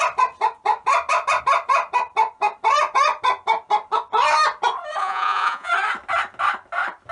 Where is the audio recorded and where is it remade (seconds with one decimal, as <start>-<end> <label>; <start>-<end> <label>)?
0.0-5.0 recorded; 5.0-5.7 remade; 5.7-7.1 recorded